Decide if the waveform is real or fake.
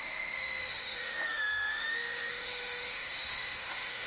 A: fake